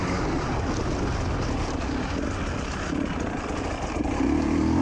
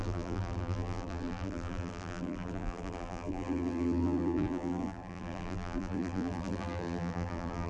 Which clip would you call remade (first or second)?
second